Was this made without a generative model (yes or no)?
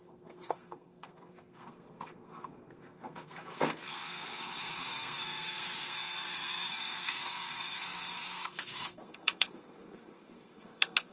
no